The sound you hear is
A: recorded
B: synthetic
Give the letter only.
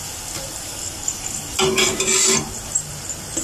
A